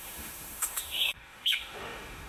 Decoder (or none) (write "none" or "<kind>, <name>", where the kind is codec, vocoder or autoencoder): autoencoder, DAC-VAE